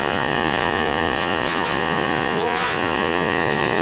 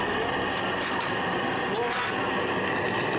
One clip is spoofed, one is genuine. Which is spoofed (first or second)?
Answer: first